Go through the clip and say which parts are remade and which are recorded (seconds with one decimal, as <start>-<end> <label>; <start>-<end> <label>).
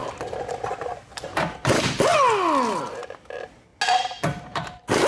0.0-1.2 recorded; 1.2-2.1 remade; 2.1-3.2 recorded; 3.2-3.7 remade; 3.7-4.4 recorded; 4.4-5.1 remade